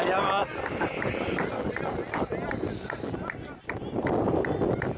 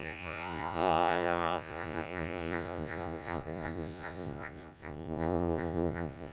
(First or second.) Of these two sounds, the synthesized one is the second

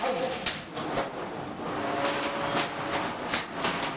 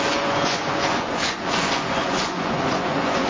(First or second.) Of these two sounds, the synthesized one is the second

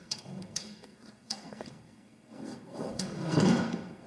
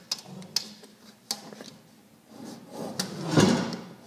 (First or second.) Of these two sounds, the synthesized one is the first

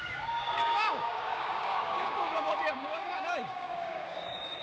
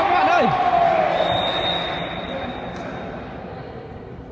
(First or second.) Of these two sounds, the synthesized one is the first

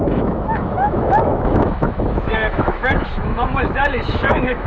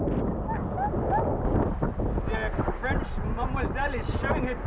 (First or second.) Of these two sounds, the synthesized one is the first